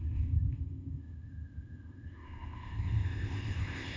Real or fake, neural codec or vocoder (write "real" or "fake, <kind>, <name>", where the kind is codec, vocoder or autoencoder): fake, codec, ZipCodec